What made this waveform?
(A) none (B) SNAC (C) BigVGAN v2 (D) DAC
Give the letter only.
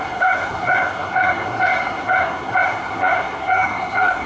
B